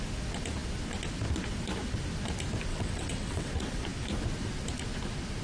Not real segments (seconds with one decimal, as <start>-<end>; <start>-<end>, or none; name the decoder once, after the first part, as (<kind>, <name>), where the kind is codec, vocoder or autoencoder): 2.7-3.5 (vocoder, WaveNeXt)